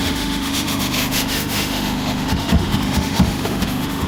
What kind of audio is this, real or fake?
fake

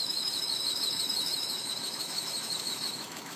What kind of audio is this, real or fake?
fake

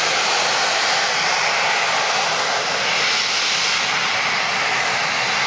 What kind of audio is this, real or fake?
real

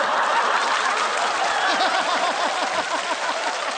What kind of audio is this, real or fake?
real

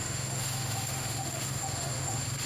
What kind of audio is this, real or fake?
fake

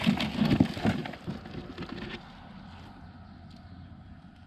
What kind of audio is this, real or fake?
real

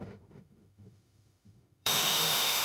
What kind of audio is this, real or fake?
fake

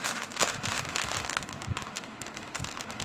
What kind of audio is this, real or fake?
fake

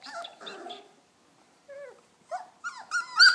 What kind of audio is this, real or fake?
real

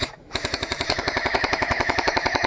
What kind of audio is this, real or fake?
fake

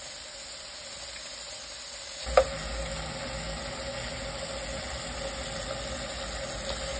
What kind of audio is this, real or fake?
real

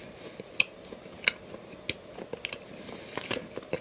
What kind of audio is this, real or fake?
real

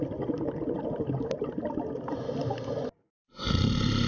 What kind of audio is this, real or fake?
real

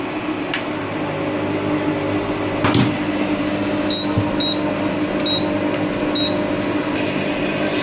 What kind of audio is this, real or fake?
real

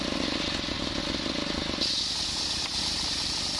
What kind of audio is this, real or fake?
real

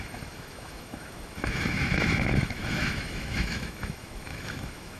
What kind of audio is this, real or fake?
fake